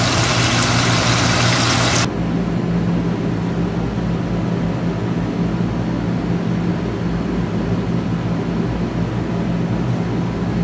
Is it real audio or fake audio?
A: real